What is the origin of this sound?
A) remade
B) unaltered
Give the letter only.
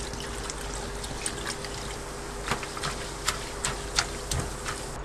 B